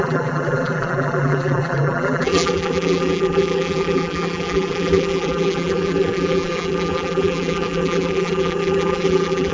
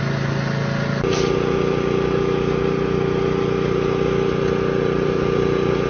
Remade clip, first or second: first